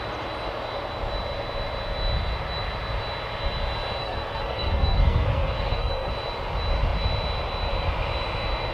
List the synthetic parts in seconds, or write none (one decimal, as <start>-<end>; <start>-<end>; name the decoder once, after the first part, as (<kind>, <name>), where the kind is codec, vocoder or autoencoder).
4.0-6.1 (codec, SNAC)